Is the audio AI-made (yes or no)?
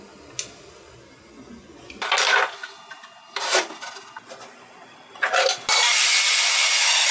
no